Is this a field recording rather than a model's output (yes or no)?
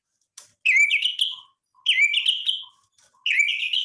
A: yes